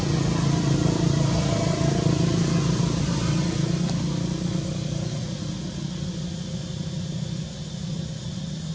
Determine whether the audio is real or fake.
real